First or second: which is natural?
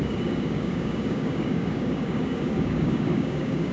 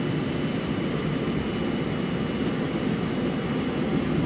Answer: second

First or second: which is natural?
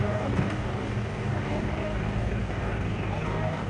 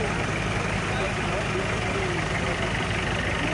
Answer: second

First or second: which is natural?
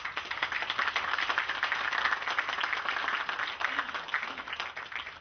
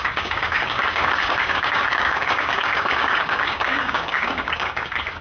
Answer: first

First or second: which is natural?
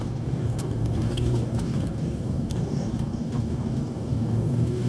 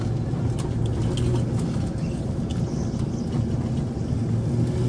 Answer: second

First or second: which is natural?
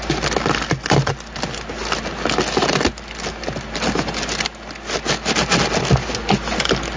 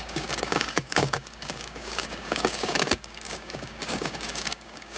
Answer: first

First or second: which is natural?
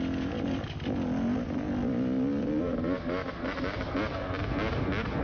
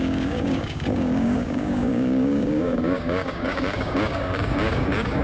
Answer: first